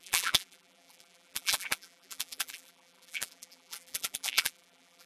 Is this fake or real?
fake